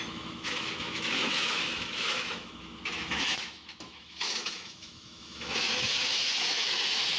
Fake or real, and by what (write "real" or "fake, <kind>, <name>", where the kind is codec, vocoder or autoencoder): fake, autoencoder, DAC-VAE